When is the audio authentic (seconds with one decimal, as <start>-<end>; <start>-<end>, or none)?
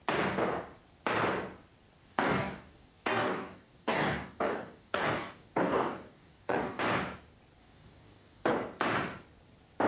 0.0-2.0; 6.8-7.6; 8.5-9.9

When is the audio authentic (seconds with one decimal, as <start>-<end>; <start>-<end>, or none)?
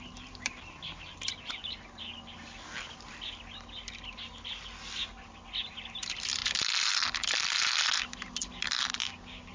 0.0-9.0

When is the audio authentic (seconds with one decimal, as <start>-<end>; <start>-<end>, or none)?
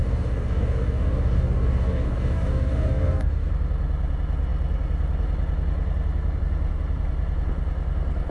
3.5-8.3